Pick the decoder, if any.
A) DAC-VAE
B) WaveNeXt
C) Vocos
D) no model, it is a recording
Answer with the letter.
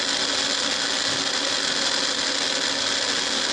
D